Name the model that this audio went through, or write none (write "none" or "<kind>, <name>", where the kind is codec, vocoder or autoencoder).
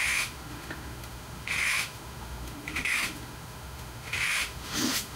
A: autoencoder, DAC-VAE